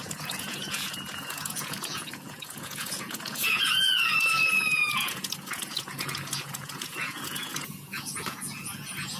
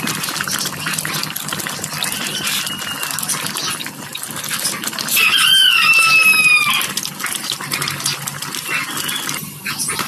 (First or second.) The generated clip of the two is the first